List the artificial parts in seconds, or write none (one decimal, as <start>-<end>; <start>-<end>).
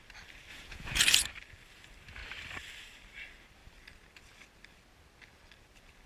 0.5-1.0